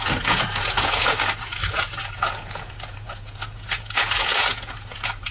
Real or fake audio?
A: fake